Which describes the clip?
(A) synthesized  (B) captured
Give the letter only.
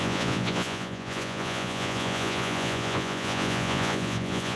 A